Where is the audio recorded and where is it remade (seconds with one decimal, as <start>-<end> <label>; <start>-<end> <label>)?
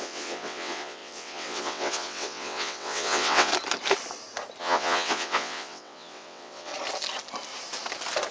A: 0.0-3.5 remade; 3.5-4.6 recorded; 4.6-6.7 remade; 6.7-8.3 recorded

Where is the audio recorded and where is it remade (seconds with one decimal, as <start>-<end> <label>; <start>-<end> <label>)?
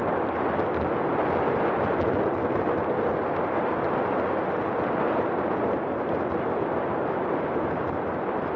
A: 0.0-8.6 recorded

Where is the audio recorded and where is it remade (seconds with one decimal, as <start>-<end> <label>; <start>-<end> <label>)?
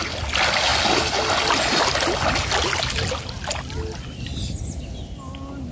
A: 0.0-5.7 recorded